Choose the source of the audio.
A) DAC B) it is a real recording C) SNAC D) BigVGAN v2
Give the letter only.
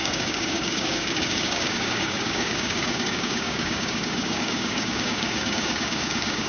A